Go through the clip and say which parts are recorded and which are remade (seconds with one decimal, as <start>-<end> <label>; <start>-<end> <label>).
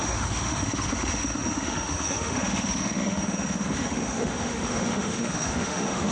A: 0.0-6.1 remade